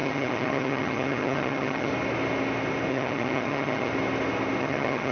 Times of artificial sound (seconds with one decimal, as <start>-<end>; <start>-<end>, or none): 0.0-1.9; 2.9-3.9; 4.6-5.1